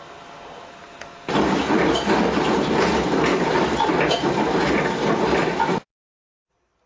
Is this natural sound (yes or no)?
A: yes